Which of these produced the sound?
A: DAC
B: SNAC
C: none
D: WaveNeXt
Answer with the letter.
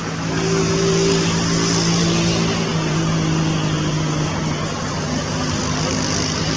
C